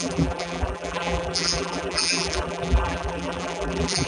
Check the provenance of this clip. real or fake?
fake